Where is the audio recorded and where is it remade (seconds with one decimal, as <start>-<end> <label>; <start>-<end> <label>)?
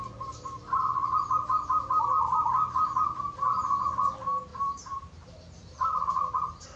0.0-4.5 recorded; 4.5-6.8 remade